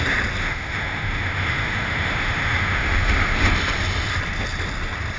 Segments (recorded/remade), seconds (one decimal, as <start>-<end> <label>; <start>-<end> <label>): 0.0-0.4 recorded; 0.4-3.5 remade; 3.5-5.2 recorded

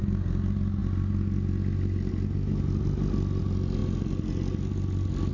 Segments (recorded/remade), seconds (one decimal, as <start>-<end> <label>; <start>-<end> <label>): 0.0-5.3 recorded

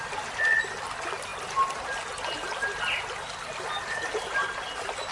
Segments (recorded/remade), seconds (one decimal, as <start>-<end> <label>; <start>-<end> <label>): 0.0-5.1 recorded

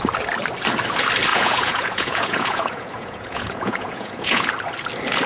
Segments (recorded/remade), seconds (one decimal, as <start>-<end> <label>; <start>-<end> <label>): 0.0-1.3 recorded; 1.3-4.5 remade; 4.5-5.3 recorded

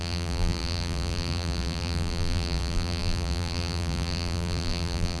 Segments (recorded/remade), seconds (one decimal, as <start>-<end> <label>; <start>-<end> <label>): 0.0-5.2 remade

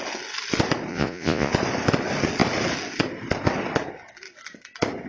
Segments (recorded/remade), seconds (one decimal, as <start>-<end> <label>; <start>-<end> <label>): 0.0-0.9 recorded; 0.9-1.5 remade; 1.5-5.1 recorded

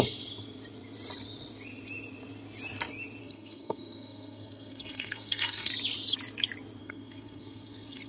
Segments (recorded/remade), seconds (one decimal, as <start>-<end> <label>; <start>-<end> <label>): 0.0-3.2 recorded; 3.2-5.7 remade; 5.7-6.8 recorded; 6.8-8.1 remade